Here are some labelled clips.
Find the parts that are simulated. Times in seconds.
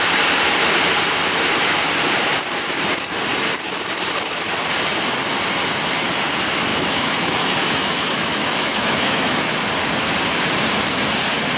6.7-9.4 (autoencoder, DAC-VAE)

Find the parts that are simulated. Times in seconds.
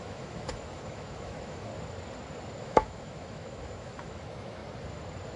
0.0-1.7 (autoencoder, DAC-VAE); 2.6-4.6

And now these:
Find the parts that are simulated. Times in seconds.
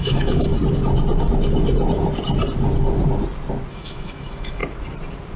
0.0-0.5 (autoencoder, DAC-VAE); 3.7-4.6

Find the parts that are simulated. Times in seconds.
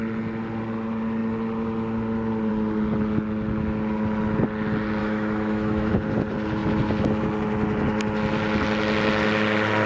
5.0-5.9 (autoencoder, DAC-VAE)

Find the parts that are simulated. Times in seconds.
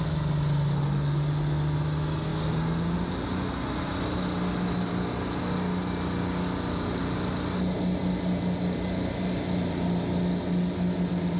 none